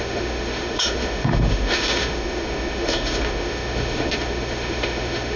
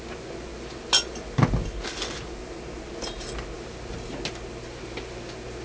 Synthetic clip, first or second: first